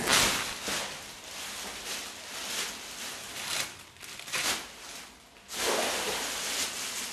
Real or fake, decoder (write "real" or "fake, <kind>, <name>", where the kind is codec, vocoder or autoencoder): real